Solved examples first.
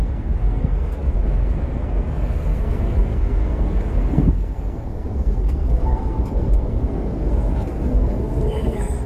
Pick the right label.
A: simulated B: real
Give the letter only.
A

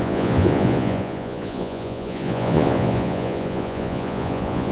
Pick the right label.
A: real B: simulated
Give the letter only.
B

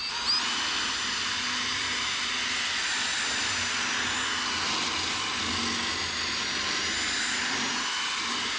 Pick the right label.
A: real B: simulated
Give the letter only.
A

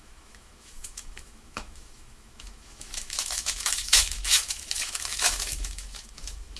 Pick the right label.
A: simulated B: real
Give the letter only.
A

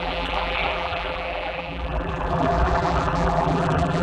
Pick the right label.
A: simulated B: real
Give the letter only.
A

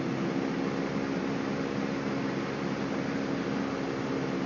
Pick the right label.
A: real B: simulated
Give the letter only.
A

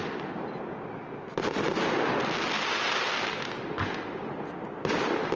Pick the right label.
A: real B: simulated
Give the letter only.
A